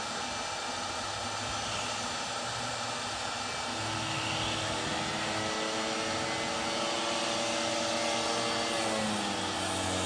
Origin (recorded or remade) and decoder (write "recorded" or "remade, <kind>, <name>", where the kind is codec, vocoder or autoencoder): recorded